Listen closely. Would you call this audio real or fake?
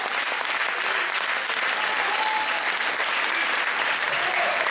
real